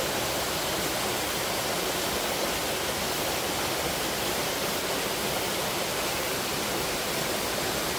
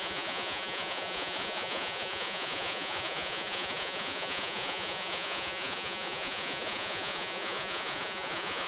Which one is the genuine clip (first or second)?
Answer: first